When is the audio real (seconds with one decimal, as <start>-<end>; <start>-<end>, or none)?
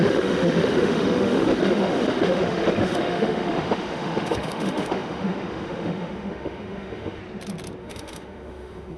7.2-7.8